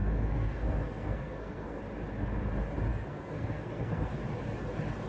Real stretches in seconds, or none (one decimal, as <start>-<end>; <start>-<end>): 1.8-2.9; 4.2-5.1